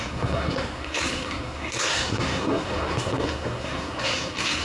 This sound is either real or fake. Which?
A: fake